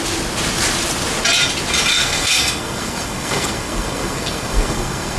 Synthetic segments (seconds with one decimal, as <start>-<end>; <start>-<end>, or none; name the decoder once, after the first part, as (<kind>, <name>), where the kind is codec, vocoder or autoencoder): 1.9-5.2 (codec, SNAC)